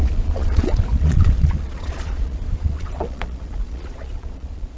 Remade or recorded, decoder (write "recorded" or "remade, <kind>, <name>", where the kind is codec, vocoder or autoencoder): remade, vocoder, Vocos